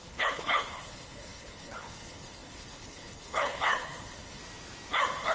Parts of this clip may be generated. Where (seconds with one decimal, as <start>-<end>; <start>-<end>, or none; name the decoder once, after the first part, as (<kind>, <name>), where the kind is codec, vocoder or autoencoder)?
0.0-4.4 (codec, HILCodec)